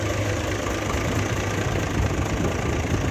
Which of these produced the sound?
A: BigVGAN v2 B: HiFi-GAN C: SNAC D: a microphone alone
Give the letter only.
D